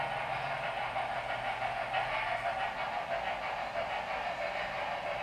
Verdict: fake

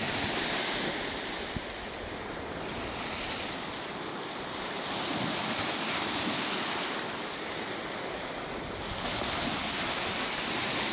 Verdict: real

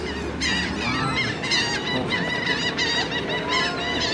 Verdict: real